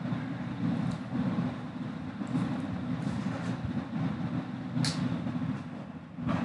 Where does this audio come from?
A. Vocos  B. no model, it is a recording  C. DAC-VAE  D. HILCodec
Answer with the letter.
B